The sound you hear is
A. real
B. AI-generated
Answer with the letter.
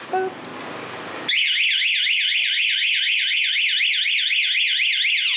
A